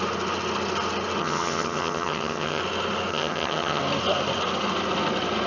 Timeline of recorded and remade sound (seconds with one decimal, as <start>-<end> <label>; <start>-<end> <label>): 0.0-1.2 recorded; 1.2-2.6 remade; 2.6-3.1 recorded; 3.1-3.8 remade; 3.8-5.5 recorded